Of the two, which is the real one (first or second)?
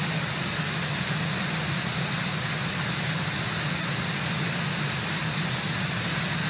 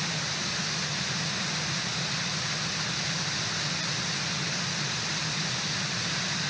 first